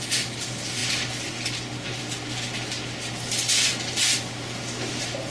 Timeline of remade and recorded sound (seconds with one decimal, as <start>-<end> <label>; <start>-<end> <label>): 0.0-5.3 recorded